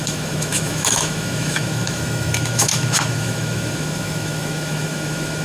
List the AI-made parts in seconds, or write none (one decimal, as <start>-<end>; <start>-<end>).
0.0-5.4